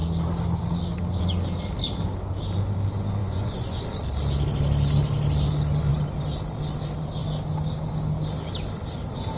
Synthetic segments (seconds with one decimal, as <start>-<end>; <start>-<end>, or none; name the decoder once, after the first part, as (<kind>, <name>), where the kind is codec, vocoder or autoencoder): 3.2-3.8 (vocoder, Vocos)